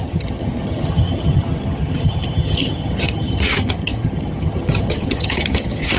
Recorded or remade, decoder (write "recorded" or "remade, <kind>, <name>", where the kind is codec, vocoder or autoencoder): remade, vocoder, HiFi-GAN